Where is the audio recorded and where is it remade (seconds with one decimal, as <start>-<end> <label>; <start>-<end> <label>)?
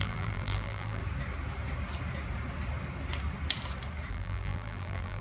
0.0-1.0 remade; 1.0-4.1 recorded; 4.1-5.2 remade